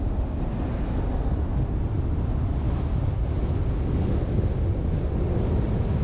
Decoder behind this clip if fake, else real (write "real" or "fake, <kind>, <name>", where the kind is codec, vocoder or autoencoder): real